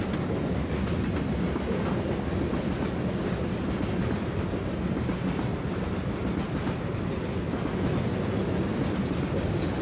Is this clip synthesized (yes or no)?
no